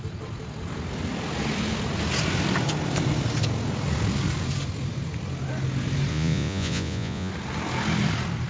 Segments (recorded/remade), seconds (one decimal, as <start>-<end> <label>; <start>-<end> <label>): 0.0-6.1 recorded; 6.1-7.3 remade; 7.3-8.5 recorded